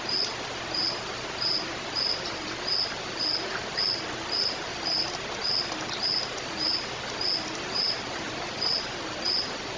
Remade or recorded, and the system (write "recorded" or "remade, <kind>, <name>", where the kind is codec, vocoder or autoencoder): recorded